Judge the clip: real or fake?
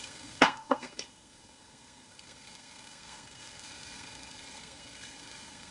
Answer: fake